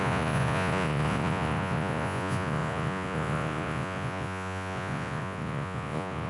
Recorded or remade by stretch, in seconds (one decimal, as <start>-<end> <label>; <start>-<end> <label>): 0.0-6.3 remade